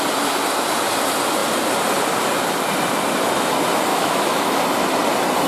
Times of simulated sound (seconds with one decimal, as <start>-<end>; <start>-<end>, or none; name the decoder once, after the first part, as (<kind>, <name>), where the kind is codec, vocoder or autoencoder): 3.9-4.6 (autoencoder, DAC-VAE)